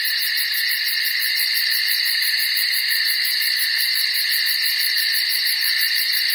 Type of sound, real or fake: real